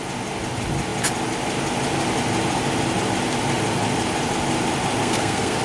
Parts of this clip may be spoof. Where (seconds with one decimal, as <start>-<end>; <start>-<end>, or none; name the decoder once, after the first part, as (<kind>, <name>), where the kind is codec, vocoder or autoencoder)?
5.0-5.6 (codec, SNAC)